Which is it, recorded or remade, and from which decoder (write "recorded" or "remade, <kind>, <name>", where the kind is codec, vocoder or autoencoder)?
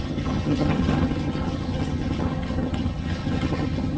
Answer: remade, vocoder, HiFi-GAN